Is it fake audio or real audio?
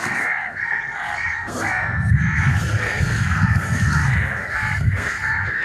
fake